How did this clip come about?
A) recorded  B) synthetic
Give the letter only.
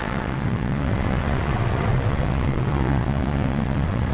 B